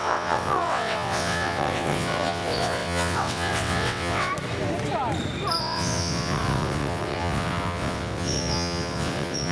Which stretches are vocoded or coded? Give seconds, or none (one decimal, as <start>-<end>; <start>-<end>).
0.0-4.3; 5.6-9.5